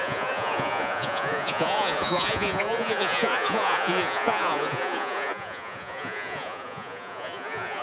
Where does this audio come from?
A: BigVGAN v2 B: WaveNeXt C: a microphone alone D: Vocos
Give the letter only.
D